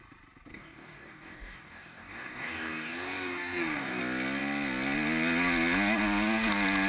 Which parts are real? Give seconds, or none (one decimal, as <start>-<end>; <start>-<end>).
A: 0.0-0.5; 4.0-6.9